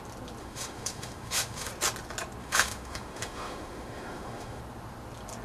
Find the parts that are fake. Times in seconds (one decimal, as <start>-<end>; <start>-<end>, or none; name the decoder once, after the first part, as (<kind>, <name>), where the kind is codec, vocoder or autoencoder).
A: 0.4-1.7 (autoencoder, DAC-VAE); 2.4-4.6